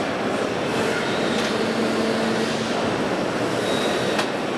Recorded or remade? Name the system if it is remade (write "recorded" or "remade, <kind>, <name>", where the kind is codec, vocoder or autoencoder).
recorded